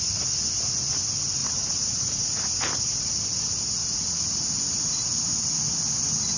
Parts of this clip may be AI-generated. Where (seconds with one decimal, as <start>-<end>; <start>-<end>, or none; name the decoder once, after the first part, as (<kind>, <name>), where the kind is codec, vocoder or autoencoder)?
1.4-3.1 (vocoder, Vocos); 3.8-4.9